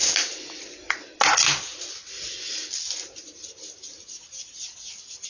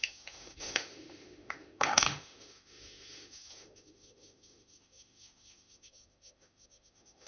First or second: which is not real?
second